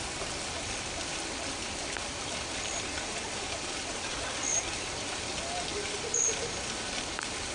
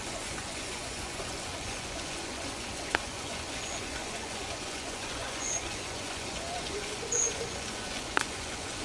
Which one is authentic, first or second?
first